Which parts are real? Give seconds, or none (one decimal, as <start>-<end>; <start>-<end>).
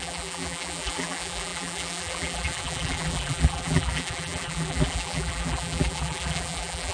none